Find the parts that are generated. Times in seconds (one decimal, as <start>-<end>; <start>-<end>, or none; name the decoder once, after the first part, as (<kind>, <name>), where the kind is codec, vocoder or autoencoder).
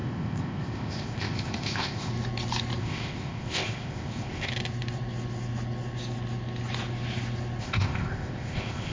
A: 0.0-2.1 (codec, ZipCodec); 2.8-4.5; 7.6-8.9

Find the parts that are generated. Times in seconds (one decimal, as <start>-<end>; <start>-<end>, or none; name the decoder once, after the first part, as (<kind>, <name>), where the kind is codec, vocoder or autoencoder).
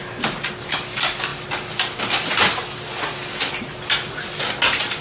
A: none